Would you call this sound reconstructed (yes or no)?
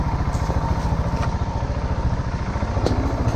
no